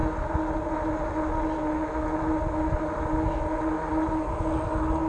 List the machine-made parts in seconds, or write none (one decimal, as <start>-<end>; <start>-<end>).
none